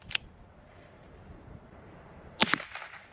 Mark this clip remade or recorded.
remade